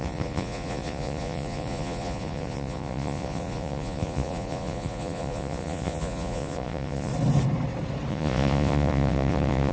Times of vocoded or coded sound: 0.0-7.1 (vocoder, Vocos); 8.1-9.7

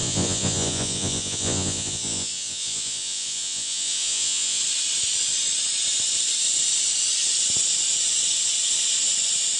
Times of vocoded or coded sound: 0.0-4.6 (vocoder, Vocos)

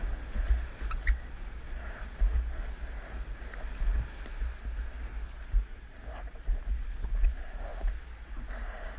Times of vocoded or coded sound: none

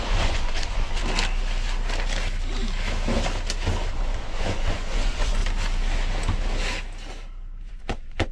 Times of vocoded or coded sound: 0.0-1.0 (vocoder, Vocos); 3.9-5.4; 7.7-8.3

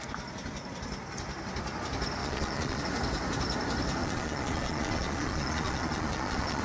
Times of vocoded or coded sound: 2.2-2.8 (vocoder, Vocos); 4.0-6.6

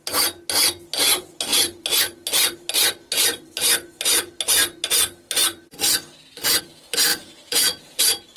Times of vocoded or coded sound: 7.1-8.0 (vocoder, Vocos)